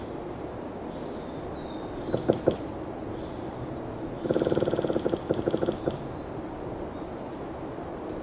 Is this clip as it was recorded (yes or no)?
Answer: yes